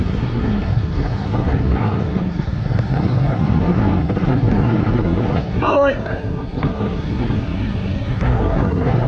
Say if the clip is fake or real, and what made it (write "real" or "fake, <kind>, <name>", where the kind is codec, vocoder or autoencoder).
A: fake, codec, SNAC